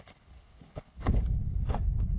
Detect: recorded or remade remade